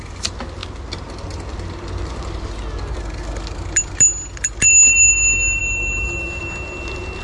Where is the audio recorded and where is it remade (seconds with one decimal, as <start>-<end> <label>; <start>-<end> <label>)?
0.0-5.6 recorded; 5.6-6.4 remade; 6.4-7.2 recorded